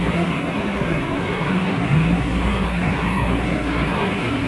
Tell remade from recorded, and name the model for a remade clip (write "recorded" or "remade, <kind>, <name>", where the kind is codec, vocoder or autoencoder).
remade, codec, SNAC